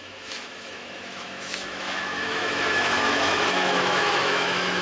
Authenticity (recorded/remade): remade